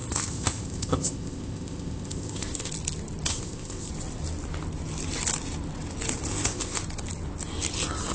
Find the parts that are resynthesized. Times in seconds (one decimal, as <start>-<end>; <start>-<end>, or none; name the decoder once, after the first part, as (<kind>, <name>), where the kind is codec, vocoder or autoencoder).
0.0-2.7 (codec, ZipCodec); 3.3-3.9; 6.3-6.8